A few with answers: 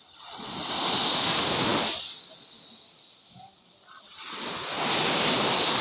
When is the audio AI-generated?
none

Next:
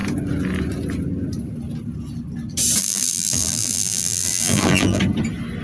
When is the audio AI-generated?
2.8-5.0 (vocoder, BigVGAN v2)

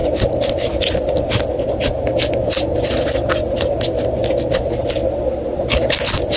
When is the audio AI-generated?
0.0-0.5 (vocoder, BigVGAN v2)